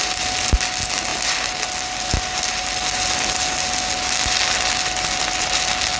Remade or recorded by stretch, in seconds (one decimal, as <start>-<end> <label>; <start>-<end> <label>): 0.0-6.0 recorded